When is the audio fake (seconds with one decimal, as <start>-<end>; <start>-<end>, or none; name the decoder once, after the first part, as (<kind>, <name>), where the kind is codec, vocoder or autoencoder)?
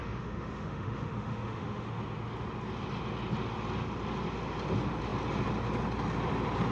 0.0-2.0 (autoencoder, DAC-VAE)